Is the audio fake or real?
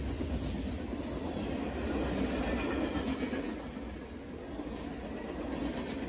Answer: real